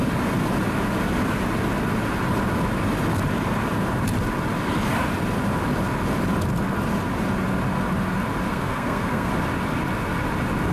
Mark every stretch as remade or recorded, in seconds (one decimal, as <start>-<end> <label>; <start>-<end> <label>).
0.0-8.5 recorded; 8.5-9.3 remade; 9.3-10.7 recorded